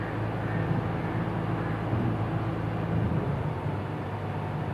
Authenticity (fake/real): real